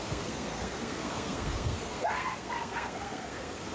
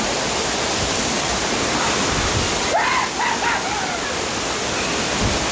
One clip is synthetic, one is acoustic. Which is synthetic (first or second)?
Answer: first